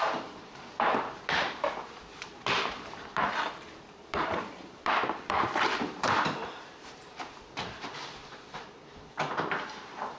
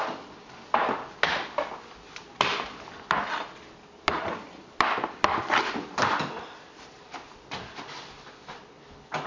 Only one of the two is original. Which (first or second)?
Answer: second